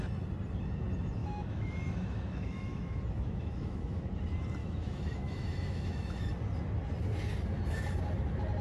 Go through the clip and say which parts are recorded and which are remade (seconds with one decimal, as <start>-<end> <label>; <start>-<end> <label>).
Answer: 0.0-1.2 recorded; 1.2-4.1 remade; 4.1-4.6 recorded; 4.6-6.3 remade; 6.3-8.6 recorded